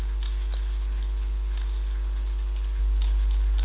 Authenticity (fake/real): real